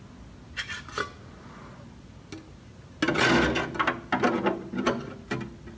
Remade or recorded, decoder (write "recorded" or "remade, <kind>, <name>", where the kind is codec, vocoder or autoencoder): recorded